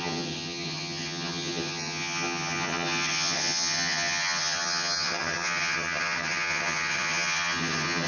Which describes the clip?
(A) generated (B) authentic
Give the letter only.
A